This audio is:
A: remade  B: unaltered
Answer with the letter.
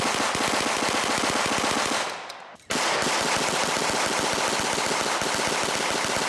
B